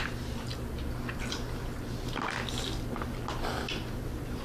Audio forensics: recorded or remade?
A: recorded